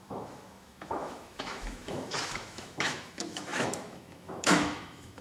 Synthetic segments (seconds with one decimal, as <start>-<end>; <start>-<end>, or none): 0.0-5.2